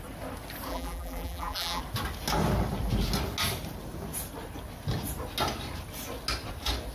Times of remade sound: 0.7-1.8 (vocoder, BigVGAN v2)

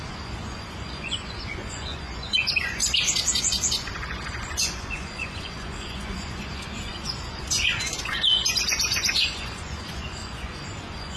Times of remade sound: 0.0-2.8 (vocoder, Vocos); 3.4-11.2

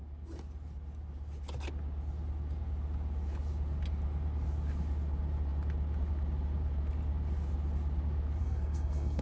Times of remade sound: 8.4-9.2 (codec, SNAC)